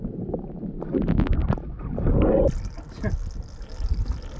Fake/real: real